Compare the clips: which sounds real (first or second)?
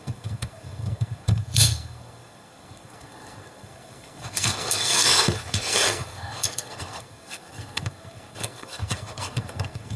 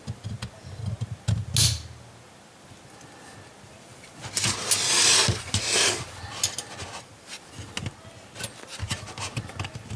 second